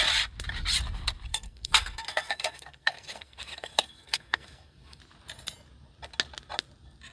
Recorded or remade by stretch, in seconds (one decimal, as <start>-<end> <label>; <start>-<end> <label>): 0.0-1.3 recorded; 1.3-5.0 remade; 5.0-7.1 recorded